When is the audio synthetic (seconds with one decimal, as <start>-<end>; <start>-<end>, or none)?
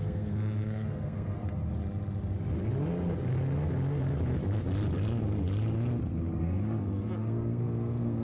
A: 0.0-1.4; 6.3-8.2